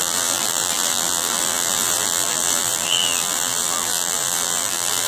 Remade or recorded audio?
remade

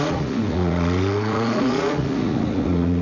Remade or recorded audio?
remade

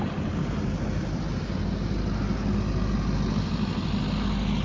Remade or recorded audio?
recorded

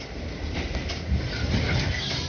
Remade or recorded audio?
remade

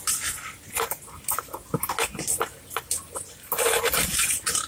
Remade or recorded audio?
recorded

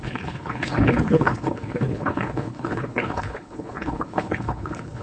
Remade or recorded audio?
remade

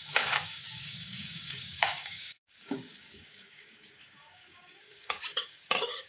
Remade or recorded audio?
remade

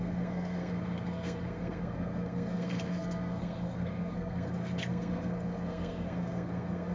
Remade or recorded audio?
remade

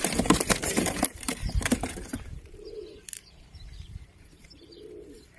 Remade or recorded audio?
remade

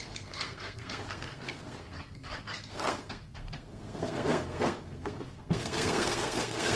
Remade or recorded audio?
remade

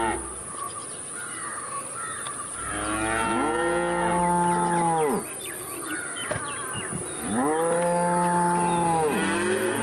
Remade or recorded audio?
recorded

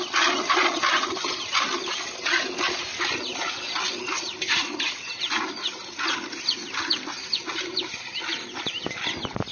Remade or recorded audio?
recorded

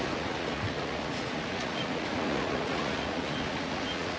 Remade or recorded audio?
remade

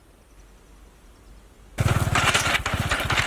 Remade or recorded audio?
recorded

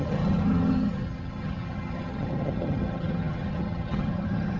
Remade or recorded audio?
remade